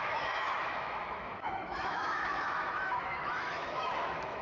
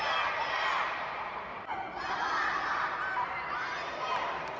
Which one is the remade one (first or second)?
first